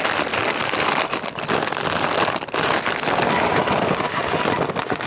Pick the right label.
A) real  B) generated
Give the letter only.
A